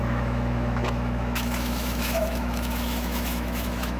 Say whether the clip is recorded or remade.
remade